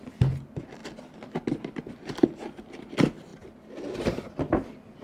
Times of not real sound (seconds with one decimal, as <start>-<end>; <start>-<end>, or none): 0.0-0.8; 1.9-3.3